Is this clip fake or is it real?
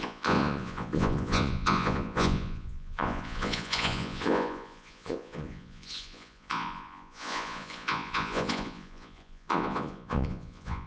fake